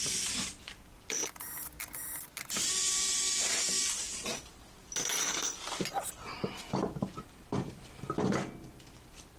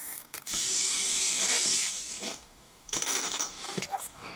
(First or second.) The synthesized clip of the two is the second